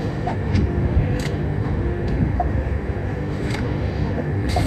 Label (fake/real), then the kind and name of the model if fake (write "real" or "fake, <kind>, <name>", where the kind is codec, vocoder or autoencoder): fake, autoencoder, DAC-VAE